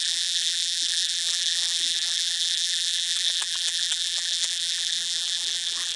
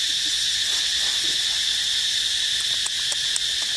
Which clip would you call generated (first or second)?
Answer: first